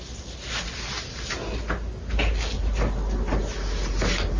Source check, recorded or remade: recorded